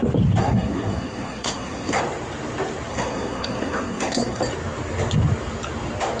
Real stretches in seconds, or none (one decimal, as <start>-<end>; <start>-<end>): 0.0-0.4; 2.0-2.9; 4.4-6.2